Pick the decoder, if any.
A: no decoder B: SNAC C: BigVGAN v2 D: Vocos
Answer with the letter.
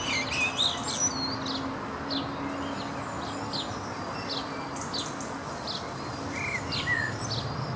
A